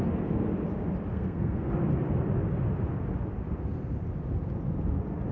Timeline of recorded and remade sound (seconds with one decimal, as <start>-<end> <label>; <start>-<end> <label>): 0.0-1.1 recorded; 1.1-1.7 remade; 1.7-5.3 recorded